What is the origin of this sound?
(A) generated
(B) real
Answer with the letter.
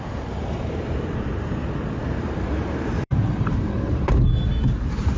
A